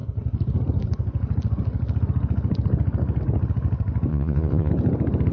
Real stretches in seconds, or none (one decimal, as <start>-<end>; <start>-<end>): 0.0-4.1; 4.7-5.3

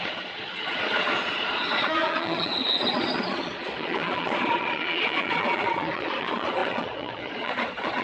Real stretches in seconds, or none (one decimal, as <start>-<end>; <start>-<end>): none